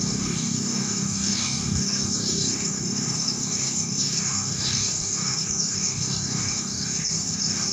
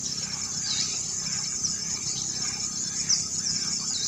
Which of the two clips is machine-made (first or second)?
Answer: first